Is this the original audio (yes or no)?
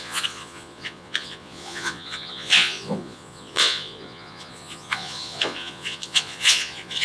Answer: no